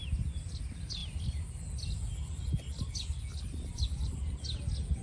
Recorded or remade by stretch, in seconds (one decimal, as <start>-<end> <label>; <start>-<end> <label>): 0.0-3.3 recorded; 3.3-4.4 remade; 4.4-5.0 recorded